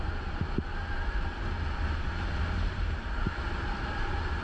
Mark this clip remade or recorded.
recorded